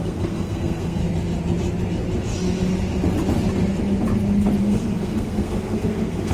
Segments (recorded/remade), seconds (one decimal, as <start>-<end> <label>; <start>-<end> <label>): 0.0-1.0 remade; 1.0-4.6 recorded; 4.6-6.3 remade